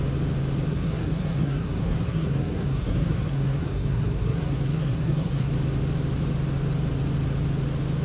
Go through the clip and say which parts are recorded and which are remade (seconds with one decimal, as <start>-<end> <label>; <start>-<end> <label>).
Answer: 0.0-0.7 recorded; 0.7-5.5 remade; 5.5-8.0 recorded